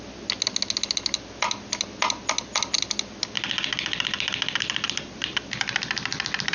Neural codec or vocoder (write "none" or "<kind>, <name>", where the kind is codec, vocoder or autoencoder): none